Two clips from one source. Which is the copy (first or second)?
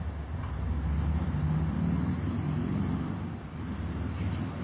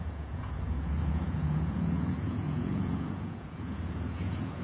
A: second